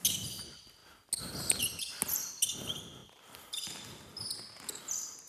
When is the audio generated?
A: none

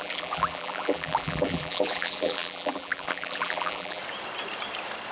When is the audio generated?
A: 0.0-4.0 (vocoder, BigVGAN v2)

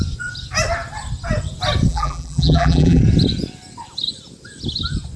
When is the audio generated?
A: 1.9-3.0 (vocoder, BigVGAN v2)

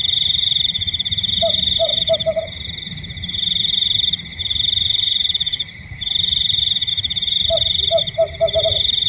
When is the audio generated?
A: 0.0-1.9 (vocoder, BigVGAN v2); 2.4-9.1

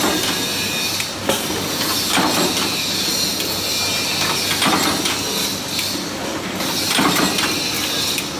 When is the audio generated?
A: none